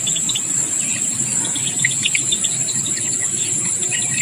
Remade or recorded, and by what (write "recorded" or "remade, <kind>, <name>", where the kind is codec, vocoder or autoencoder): recorded